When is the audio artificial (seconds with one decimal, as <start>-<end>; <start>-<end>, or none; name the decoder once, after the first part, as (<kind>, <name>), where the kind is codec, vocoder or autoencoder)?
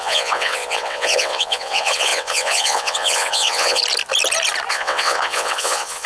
0.0-3.8 (vocoder, WaveNeXt); 4.7-6.1